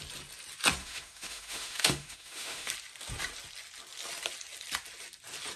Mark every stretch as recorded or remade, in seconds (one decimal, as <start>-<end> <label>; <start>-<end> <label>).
0.0-0.8 recorded; 0.8-2.7 remade; 2.7-5.6 recorded